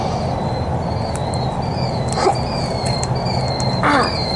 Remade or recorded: recorded